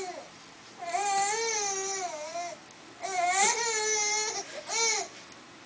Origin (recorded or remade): recorded